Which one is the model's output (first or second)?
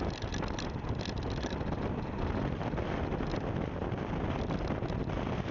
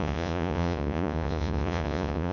second